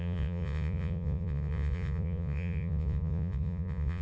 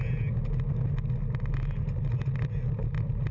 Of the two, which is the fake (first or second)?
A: first